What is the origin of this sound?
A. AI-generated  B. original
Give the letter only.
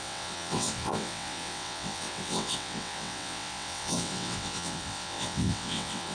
A